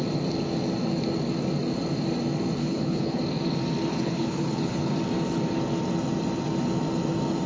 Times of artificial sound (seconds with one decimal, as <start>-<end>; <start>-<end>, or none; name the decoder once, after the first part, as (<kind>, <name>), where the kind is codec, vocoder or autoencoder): 2.6-3.2 (codec, HILCodec); 3.9-4.9